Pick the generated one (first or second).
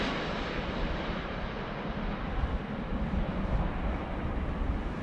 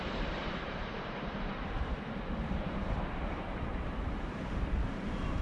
second